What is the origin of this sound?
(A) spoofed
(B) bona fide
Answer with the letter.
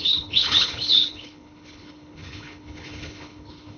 A